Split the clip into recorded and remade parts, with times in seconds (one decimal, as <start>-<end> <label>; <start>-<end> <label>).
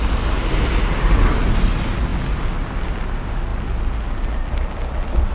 0.0-5.3 recorded